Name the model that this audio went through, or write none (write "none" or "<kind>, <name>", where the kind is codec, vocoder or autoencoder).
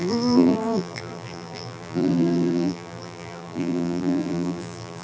vocoder, BigVGAN v2